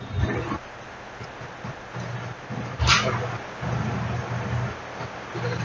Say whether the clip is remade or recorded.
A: recorded